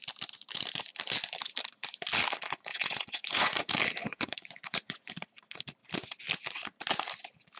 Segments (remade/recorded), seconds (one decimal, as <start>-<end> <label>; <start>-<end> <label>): 0.0-2.7 recorded; 2.7-3.6 remade; 3.6-4.0 recorded; 4.0-5.1 remade; 5.1-7.6 recorded